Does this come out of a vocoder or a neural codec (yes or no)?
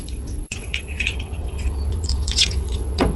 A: yes